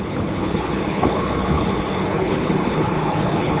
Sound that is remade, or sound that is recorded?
remade